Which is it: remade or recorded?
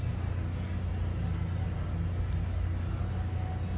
recorded